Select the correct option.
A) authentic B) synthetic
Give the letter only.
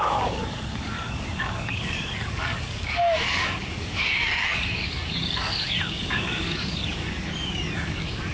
B